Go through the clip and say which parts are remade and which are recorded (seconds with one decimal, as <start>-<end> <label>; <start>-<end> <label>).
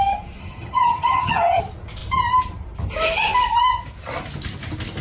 0.0-0.4 recorded; 0.4-1.6 remade; 1.6-5.0 recorded